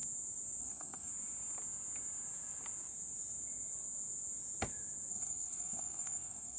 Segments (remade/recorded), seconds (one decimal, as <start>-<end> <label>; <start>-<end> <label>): 0.0-0.6 recorded; 0.6-1.1 remade; 1.1-5.1 recorded; 5.1-6.6 remade